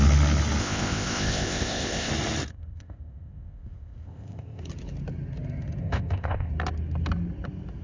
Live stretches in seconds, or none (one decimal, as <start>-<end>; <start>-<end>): 0.0-0.6; 2.1-2.5; 4.6-5.8; 6.5-7.8